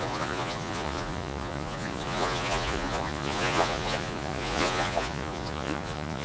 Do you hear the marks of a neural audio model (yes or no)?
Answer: yes